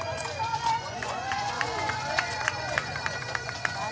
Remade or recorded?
remade